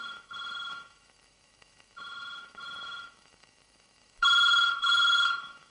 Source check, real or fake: fake